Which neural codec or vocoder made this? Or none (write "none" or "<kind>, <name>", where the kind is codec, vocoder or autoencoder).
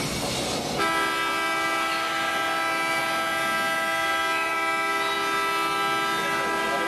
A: none